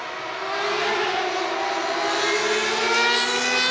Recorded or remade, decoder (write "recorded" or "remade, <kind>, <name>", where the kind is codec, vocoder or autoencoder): recorded